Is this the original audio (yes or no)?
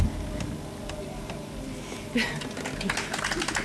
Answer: yes